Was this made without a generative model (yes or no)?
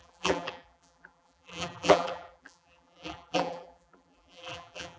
no